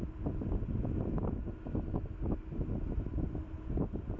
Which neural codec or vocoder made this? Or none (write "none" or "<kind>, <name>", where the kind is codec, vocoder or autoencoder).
none